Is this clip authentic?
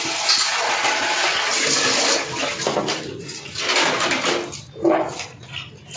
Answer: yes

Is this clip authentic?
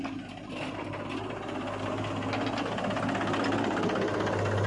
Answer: yes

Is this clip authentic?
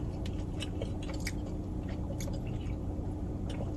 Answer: yes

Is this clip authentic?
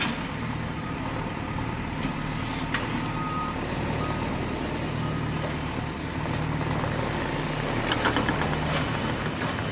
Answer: yes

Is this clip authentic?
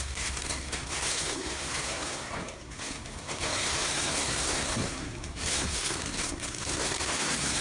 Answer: no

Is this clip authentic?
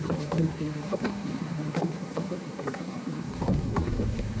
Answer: no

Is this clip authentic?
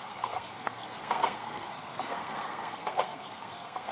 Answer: no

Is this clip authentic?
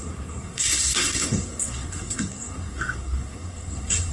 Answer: no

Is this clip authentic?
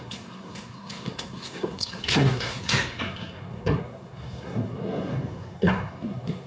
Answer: no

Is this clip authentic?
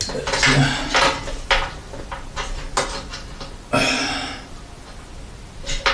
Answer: yes